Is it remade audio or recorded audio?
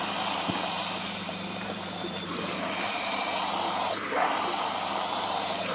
remade